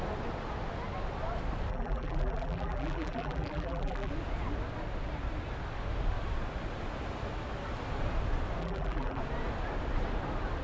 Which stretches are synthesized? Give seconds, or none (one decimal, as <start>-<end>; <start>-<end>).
1.7-4.1; 8.6-9.2